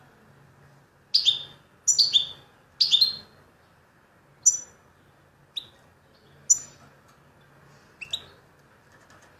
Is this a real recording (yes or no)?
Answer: yes